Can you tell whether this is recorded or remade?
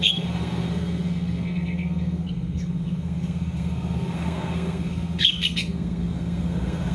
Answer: remade